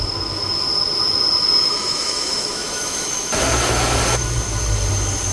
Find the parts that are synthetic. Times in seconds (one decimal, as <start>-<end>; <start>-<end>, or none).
1.7-3.3